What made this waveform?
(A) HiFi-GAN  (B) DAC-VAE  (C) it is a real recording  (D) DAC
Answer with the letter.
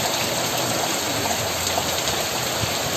C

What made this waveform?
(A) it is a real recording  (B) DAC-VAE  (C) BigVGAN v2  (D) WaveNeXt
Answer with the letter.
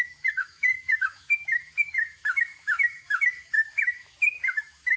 B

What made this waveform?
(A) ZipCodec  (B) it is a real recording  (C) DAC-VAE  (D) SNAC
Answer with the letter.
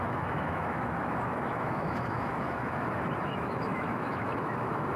C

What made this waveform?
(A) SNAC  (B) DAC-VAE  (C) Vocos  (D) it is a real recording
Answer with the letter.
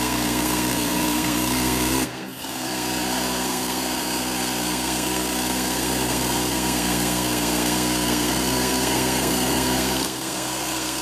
A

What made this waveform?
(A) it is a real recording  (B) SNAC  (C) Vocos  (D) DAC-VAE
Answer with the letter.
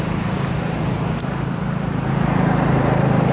A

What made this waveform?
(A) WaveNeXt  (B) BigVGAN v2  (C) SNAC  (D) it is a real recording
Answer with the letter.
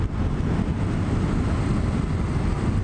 D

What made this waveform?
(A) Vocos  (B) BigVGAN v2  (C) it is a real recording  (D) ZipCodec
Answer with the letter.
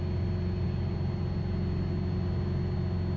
C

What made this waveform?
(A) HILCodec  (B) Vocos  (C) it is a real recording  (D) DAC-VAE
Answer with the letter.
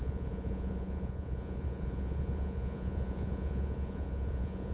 B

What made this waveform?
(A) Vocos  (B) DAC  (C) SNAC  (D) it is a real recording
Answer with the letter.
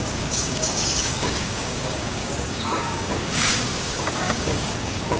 B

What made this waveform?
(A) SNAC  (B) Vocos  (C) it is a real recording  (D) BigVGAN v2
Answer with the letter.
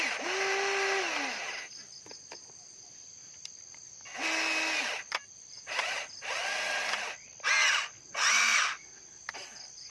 C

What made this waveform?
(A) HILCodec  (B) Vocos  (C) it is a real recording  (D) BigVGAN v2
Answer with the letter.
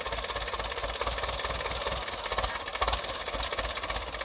C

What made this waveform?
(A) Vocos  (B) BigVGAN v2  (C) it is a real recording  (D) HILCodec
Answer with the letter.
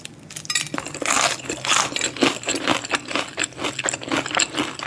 C